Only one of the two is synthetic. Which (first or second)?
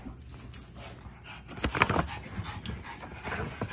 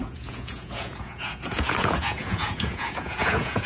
second